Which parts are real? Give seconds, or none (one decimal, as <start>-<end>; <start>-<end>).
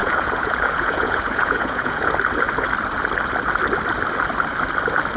2.1-5.2